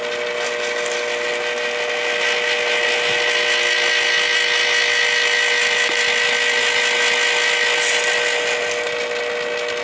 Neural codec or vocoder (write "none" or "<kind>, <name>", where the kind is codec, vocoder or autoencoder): none